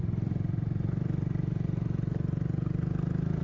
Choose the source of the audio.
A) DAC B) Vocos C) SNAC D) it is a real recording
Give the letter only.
D